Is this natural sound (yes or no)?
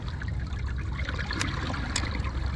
yes